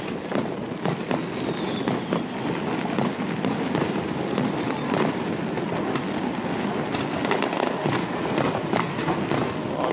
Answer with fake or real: real